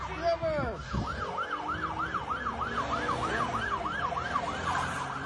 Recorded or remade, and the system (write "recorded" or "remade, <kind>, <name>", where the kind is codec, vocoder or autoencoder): recorded